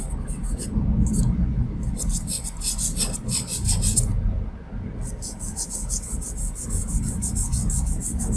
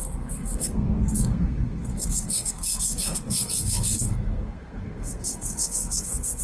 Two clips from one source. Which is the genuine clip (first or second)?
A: first